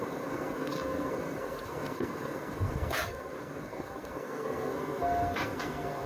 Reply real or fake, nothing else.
fake